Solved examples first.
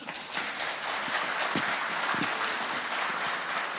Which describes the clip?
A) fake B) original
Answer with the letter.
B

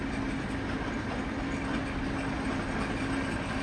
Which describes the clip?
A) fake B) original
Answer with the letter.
B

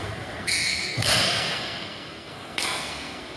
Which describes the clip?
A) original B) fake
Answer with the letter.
B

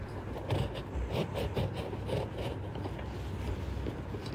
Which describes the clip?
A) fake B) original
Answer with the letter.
B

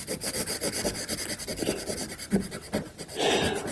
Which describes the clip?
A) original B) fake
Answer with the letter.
A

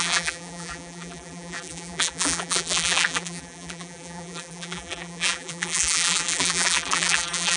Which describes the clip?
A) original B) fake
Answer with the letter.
B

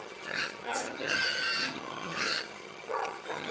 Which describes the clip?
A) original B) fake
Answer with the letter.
B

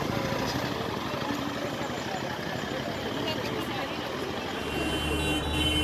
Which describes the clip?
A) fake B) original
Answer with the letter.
B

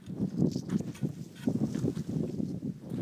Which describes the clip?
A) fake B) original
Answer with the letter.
B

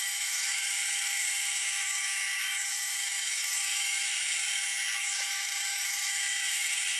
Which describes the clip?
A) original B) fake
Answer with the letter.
B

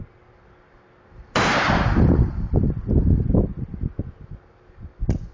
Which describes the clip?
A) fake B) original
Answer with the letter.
B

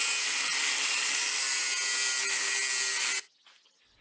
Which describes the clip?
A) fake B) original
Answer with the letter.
B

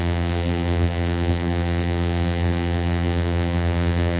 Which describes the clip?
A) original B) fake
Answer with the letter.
B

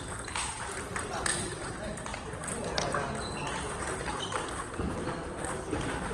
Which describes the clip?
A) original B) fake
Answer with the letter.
A